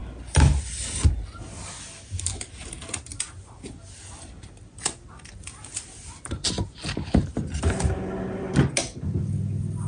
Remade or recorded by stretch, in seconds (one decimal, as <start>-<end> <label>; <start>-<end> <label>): 0.0-9.9 recorded